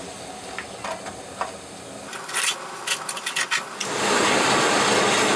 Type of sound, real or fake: real